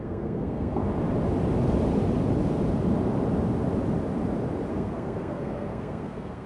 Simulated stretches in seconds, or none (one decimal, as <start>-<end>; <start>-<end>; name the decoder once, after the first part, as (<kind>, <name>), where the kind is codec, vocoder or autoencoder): 0.0-0.8 (codec, SNAC); 4.7-6.5